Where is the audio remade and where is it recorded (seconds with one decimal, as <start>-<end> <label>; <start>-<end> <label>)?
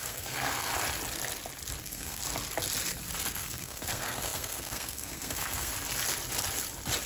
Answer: 0.0-0.7 remade; 0.7-1.8 recorded; 1.8-2.2 remade; 2.2-3.3 recorded; 3.3-5.7 remade; 5.7-7.1 recorded